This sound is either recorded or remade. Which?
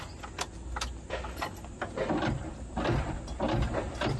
recorded